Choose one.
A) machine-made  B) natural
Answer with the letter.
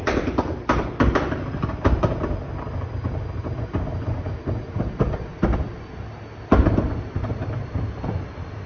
B